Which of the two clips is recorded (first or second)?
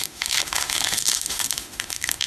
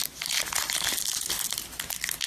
second